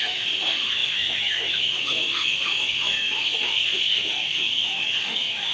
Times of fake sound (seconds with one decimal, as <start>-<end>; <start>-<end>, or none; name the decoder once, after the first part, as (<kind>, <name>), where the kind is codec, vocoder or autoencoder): 0.0-5.5 (autoencoder, DAC-VAE)